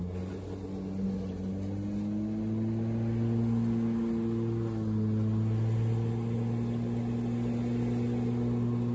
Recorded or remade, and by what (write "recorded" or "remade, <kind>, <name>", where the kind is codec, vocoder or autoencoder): recorded